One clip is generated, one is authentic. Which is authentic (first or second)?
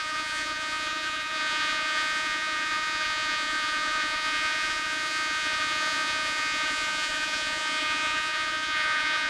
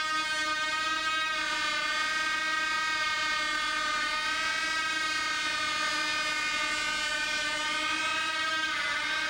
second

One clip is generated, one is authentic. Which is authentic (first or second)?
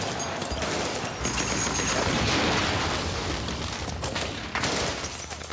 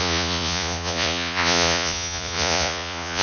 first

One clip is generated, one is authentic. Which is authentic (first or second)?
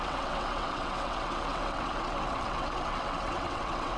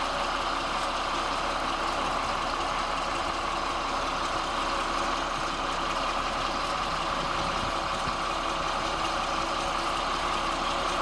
second